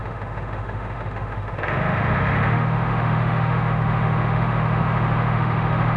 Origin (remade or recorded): remade